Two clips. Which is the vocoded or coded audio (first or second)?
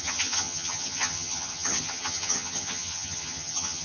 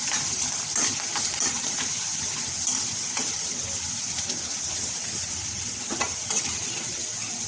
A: first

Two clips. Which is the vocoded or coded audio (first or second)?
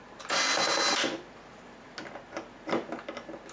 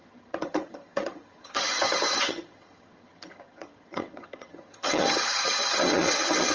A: second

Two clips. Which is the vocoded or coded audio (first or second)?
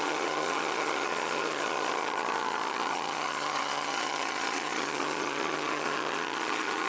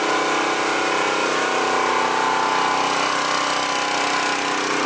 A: first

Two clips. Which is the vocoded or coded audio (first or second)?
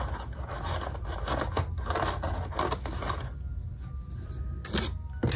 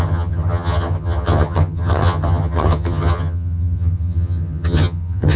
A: second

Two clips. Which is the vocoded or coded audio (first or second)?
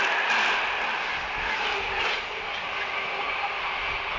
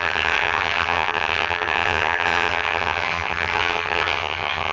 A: second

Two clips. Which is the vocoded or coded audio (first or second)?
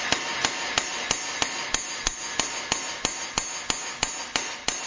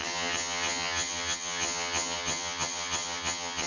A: second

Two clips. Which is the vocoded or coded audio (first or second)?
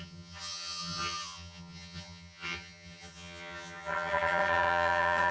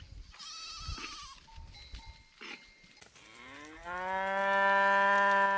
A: first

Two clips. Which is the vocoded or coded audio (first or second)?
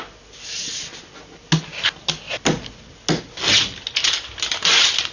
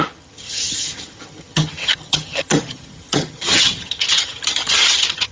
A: second